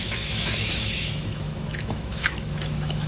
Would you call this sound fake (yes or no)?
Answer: yes